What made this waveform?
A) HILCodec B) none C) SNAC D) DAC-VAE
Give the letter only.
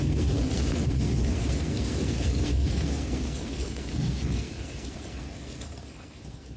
C